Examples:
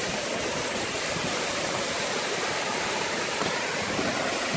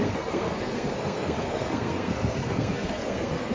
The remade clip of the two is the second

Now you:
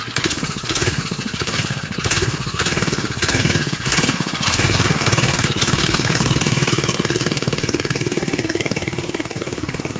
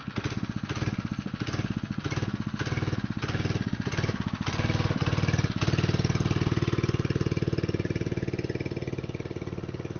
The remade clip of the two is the first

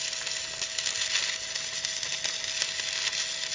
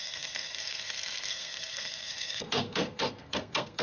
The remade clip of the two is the second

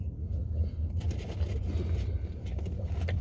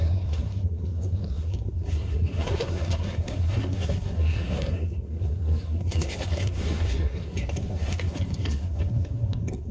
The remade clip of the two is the second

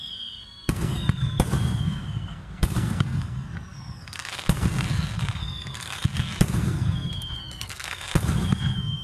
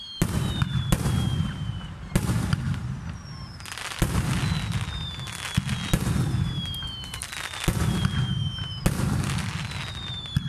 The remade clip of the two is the first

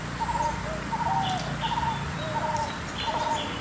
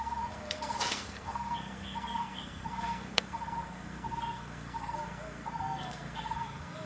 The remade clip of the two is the second